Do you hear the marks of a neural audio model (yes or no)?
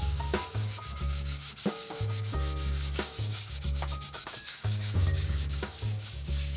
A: yes